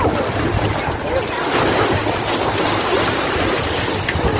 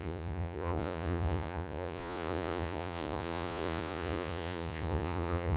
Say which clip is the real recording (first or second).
first